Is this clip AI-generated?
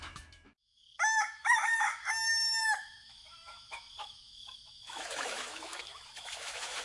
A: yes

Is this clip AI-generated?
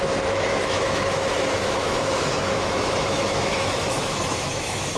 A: yes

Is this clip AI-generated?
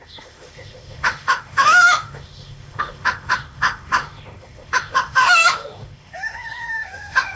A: yes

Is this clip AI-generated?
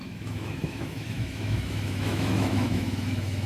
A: yes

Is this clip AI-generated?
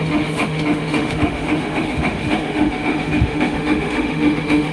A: yes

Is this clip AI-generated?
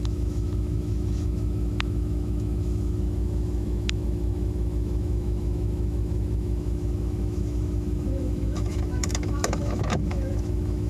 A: yes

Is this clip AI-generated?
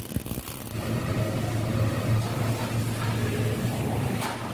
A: no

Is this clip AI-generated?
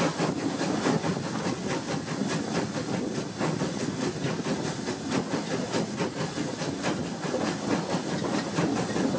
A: no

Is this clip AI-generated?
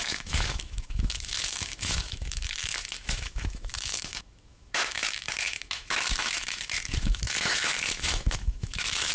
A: yes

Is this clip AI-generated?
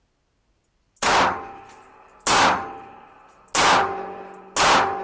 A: no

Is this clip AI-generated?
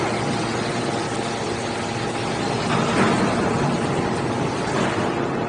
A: no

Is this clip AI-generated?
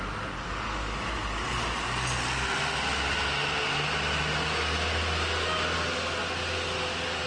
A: no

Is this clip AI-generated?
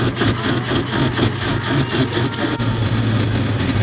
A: no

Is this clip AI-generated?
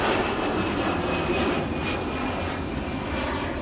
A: no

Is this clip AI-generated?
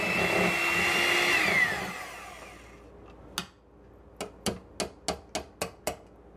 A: no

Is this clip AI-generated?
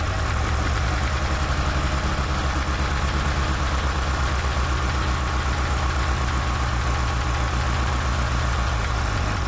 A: no